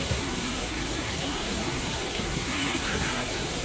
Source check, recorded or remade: remade